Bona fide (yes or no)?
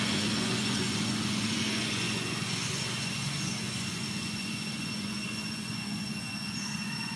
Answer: no